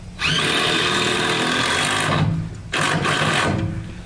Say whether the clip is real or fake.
real